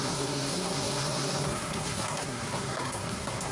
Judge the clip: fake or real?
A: fake